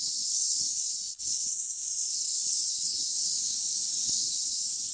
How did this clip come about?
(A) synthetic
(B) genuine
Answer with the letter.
A